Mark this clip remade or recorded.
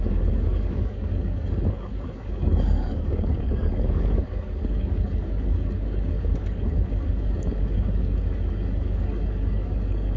remade